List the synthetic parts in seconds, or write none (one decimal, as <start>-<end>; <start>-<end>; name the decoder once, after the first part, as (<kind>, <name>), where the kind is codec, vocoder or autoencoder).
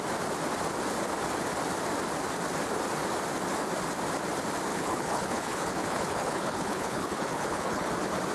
4.7-7.9 (codec, HILCodec)